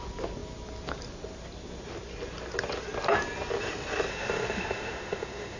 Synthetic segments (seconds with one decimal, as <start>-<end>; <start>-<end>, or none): 4.1-5.6